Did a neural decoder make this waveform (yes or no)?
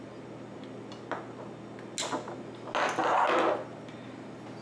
no